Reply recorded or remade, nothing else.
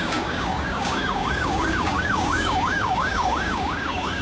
remade